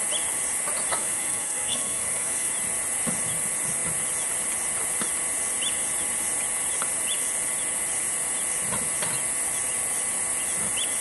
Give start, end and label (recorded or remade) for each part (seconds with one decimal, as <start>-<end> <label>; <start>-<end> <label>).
0.0-0.9 recorded; 0.9-2.5 remade; 2.5-11.0 recorded

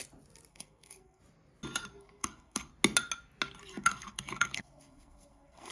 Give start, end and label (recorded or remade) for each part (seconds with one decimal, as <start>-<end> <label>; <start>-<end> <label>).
0.0-0.5 recorded; 0.5-1.2 remade; 1.2-1.9 recorded; 1.9-2.7 remade; 2.7-3.7 recorded; 3.7-5.7 remade

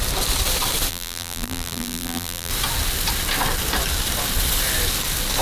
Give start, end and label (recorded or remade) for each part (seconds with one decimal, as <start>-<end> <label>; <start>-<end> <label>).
0.0-0.9 recorded; 0.9-2.5 remade; 2.5-5.4 recorded

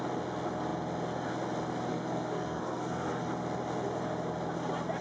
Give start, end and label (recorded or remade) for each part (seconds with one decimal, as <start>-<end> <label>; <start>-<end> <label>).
0.0-1.9 recorded; 1.9-3.2 remade; 3.2-5.0 recorded

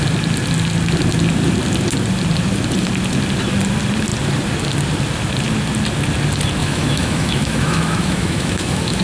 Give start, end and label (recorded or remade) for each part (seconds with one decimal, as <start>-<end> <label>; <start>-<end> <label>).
0.0-6.6 recorded; 6.6-9.0 remade